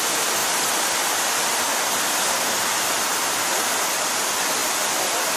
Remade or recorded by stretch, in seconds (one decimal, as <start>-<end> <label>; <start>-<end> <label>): 0.0-0.4 recorded; 0.4-3.6 remade; 3.6-5.4 recorded